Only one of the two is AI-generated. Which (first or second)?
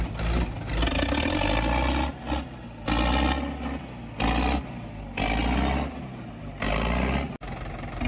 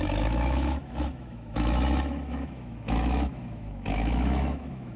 second